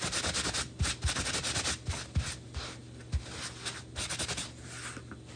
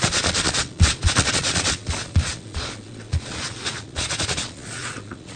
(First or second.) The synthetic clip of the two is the second